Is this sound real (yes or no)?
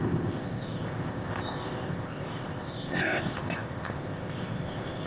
no